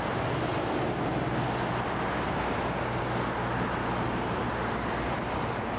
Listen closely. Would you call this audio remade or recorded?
recorded